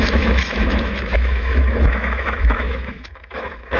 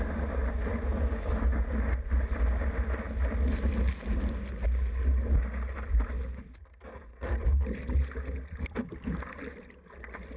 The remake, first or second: first